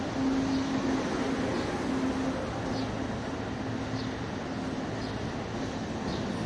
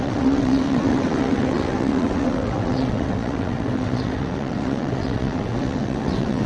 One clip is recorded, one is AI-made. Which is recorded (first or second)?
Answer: first